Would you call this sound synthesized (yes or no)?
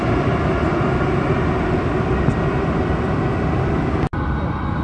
no